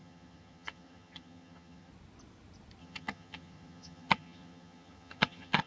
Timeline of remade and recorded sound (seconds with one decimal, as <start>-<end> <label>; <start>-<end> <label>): 0.0-1.9 remade; 1.9-2.8 recorded; 2.8-5.7 remade